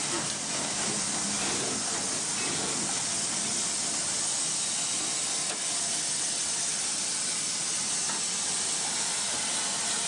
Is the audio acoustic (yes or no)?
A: yes